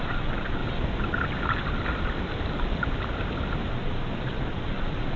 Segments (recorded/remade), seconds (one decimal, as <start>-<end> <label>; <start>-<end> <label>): 0.0-0.6 remade; 0.6-3.7 recorded; 3.7-5.2 remade